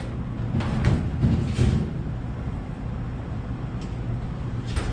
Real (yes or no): yes